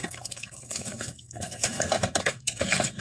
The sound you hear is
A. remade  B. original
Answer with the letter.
A